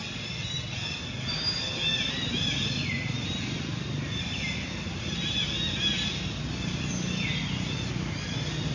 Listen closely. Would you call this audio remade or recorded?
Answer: recorded